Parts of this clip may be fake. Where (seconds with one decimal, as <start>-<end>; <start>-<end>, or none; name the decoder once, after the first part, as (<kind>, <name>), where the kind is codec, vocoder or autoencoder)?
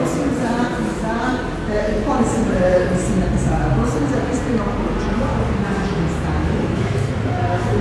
0.7-1.3 (autoencoder, DAC-VAE); 6.4-7.1